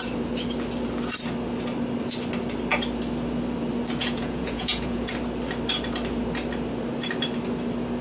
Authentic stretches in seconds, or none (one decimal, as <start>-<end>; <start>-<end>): 0.0-4.0; 5.1-8.0